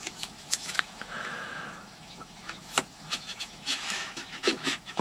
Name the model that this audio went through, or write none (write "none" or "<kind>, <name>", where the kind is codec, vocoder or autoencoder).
autoencoder, DAC-VAE